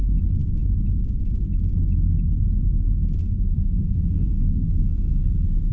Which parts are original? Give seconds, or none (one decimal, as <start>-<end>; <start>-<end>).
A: 0.0-3.2; 5.3-5.7